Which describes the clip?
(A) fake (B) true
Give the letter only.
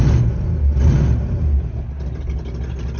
B